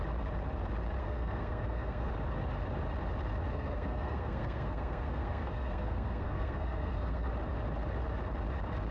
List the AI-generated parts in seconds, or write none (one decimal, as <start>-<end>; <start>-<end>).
1.0-2.1; 3.5-7.3